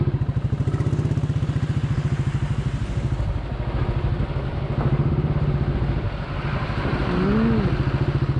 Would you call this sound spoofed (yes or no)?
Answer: no